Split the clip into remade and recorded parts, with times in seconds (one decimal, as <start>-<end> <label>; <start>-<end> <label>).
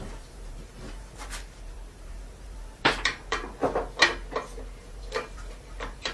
0.0-3.6 remade; 3.6-4.8 recorded; 4.8-6.1 remade